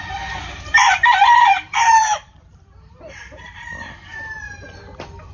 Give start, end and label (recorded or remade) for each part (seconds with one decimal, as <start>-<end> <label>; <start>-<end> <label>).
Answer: 0.0-1.2 recorded; 1.2-4.4 remade; 4.4-5.3 recorded